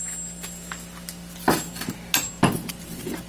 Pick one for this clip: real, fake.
real